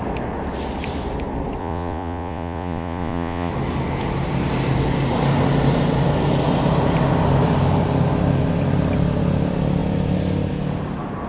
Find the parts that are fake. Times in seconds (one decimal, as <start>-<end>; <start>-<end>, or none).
1.6-3.5